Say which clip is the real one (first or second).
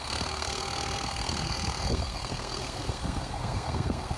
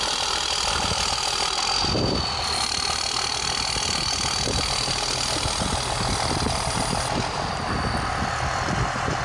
second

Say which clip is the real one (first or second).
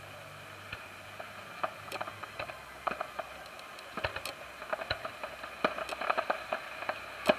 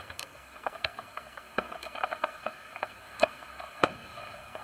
first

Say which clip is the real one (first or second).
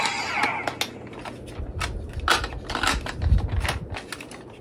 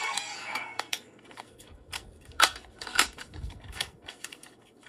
first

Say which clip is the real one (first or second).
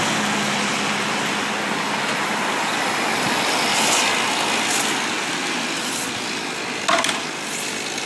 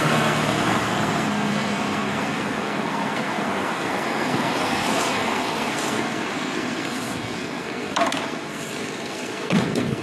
first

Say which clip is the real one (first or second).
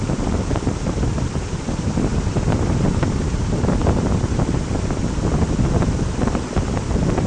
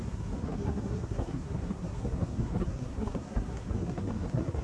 first